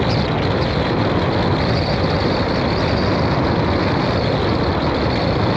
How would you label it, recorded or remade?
recorded